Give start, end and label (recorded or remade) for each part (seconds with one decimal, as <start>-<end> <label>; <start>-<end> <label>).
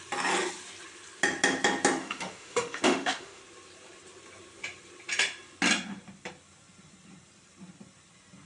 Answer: 0.0-2.0 recorded; 2.0-3.4 remade; 3.4-8.5 recorded